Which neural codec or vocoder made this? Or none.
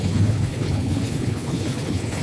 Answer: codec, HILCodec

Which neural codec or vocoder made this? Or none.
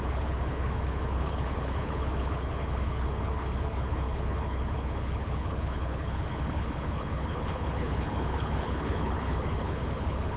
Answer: codec, HILCodec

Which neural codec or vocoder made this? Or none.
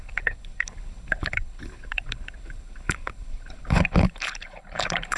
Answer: codec, HILCodec